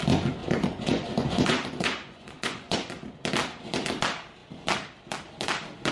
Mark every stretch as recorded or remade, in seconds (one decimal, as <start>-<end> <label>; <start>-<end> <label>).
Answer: 0.0-0.4 recorded; 0.4-2.9 remade; 2.9-5.9 recorded